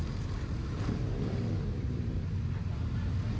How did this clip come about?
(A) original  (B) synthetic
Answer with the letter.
B